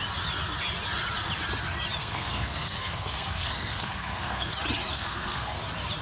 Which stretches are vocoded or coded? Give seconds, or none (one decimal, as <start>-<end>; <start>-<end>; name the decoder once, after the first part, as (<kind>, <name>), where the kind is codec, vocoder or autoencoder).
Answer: 2.0-4.5 (codec, SNAC); 4.9-5.6